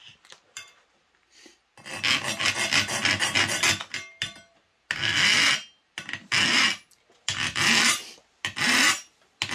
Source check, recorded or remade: recorded